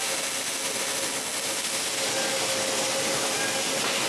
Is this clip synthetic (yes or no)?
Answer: no